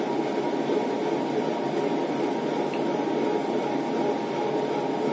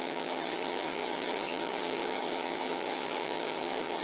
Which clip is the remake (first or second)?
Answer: second